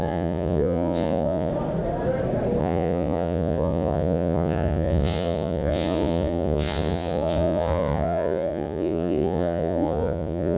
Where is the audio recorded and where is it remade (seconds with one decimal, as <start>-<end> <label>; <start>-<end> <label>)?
0.0-1.5 remade; 1.5-2.6 recorded; 2.6-10.6 remade